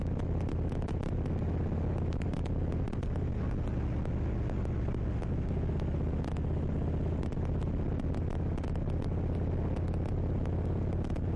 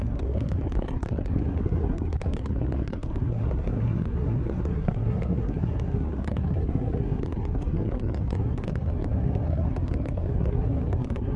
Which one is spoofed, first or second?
second